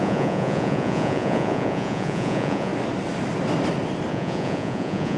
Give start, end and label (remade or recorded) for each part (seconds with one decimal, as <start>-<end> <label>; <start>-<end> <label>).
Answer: 0.0-2.7 remade; 2.7-4.1 recorded; 4.1-5.2 remade